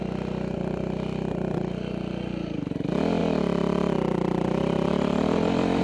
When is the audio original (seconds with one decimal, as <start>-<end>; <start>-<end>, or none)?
0.0-5.8